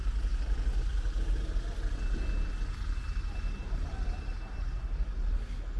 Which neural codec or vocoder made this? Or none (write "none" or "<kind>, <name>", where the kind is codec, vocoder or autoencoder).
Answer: none